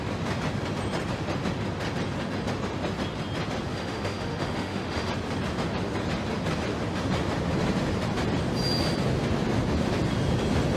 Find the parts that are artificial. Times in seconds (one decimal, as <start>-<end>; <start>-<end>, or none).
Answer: 3.7-5.1